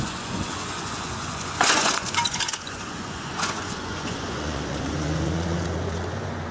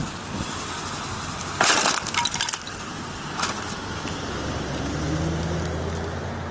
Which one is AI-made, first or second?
first